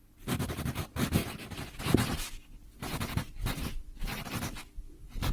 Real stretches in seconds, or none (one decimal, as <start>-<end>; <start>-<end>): 0.0-5.3